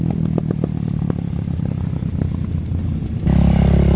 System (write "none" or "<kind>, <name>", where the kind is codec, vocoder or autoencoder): none